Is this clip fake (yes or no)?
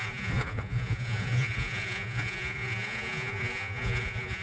yes